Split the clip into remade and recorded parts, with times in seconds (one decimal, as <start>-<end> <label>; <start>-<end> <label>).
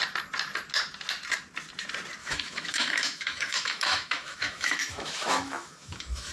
0.0-2.2 recorded; 2.2-6.3 remade